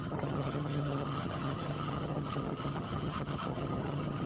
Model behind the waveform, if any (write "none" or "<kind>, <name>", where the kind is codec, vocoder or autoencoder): vocoder, HiFi-GAN